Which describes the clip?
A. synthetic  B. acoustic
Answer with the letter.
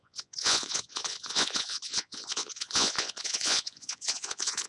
A